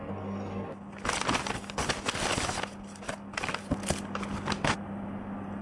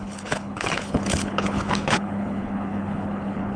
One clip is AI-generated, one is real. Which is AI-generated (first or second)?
second